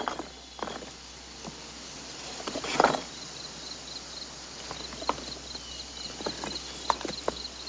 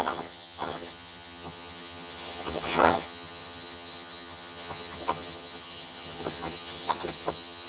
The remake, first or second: second